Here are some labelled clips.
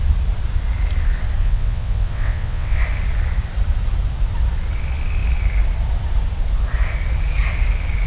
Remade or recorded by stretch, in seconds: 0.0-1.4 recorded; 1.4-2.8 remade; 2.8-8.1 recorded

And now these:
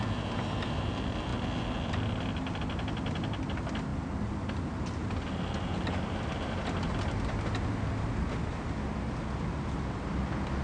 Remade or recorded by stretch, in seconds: 0.0-10.6 recorded